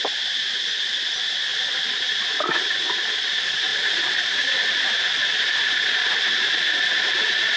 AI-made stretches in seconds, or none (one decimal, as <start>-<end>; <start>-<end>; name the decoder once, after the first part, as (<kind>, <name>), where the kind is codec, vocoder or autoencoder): none